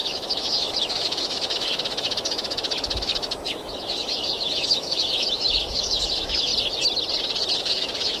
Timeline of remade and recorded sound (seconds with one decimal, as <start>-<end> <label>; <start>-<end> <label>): 0.0-6.5 remade; 6.5-7.6 recorded; 7.6-8.2 remade